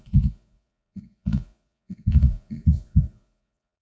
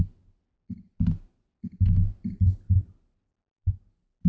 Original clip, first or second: second